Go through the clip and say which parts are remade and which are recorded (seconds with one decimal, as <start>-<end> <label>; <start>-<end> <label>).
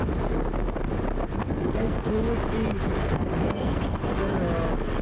0.0-1.4 recorded; 1.4-2.1 remade; 2.1-3.0 recorded; 3.0-4.3 remade; 4.3-5.0 recorded